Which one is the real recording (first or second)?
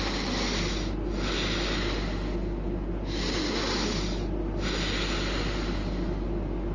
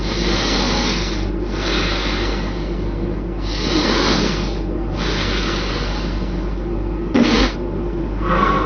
first